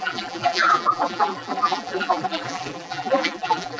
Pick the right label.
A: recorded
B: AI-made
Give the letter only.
B